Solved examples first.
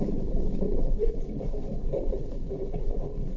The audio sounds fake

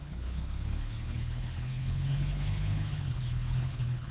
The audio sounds fake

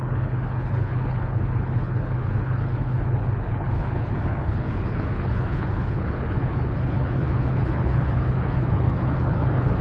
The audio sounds fake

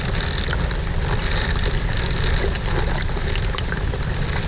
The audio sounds real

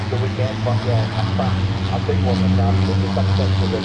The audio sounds real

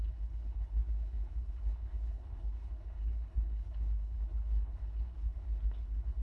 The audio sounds fake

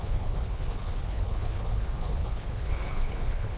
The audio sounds fake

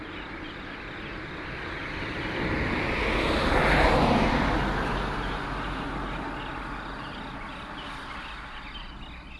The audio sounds real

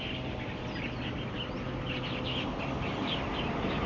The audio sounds real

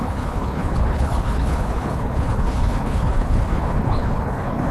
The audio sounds fake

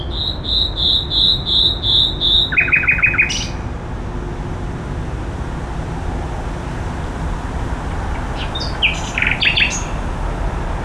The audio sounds real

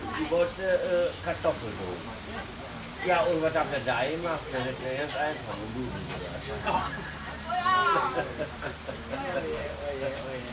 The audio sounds real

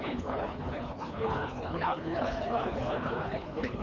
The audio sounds fake